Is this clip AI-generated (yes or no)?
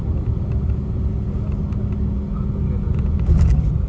no